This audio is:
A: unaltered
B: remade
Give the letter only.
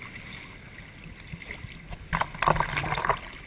A